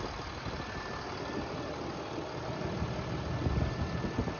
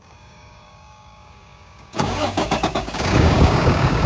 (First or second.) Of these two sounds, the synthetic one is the second